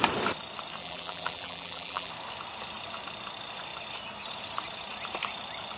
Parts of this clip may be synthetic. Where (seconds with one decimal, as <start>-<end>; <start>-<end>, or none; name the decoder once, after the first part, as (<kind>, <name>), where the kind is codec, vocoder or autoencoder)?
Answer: 0.8-2.1 (vocoder, BigVGAN v2)